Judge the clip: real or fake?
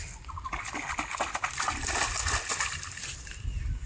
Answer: real